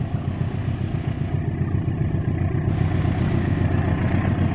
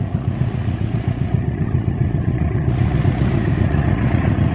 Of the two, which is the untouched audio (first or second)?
first